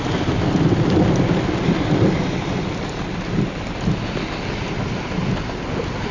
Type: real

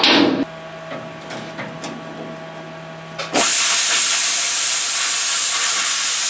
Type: real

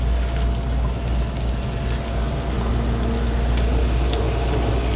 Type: real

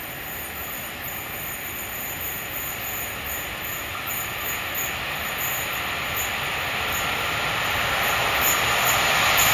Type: real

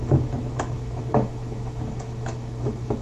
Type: fake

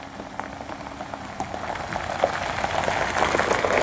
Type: real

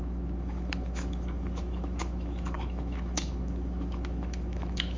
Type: fake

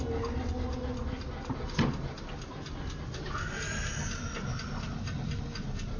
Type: real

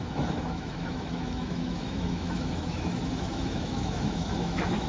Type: fake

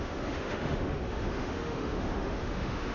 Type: fake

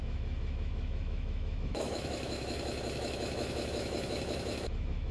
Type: fake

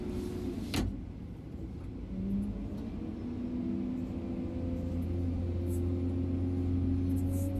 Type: real